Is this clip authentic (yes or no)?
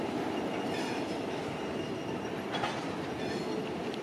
yes